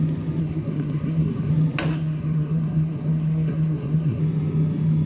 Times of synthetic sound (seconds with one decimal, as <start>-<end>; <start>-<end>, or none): 0.4-1.5; 1.9-4.2